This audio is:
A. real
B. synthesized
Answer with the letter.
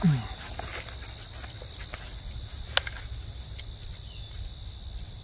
A